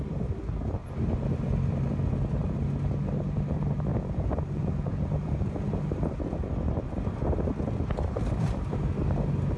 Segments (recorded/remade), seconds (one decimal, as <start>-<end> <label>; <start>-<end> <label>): 0.0-3.9 recorded; 3.9-5.7 remade; 5.7-9.6 recorded